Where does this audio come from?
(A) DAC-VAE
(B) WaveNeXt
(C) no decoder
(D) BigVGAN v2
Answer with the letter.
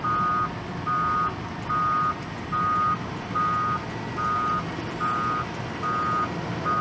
C